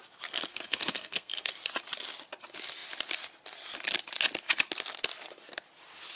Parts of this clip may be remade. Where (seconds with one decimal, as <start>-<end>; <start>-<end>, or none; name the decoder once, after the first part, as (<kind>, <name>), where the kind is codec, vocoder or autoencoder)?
0.5-1.5 (codec, SNAC)